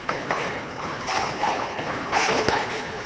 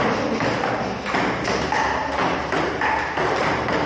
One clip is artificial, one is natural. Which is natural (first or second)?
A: second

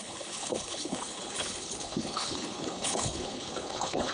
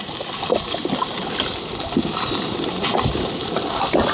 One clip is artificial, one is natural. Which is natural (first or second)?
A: second